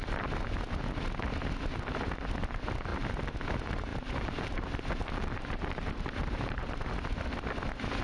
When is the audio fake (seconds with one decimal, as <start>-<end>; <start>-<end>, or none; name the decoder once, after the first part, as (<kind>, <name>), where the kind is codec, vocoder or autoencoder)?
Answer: 3.9-6.9 (vocoder, BigVGAN v2)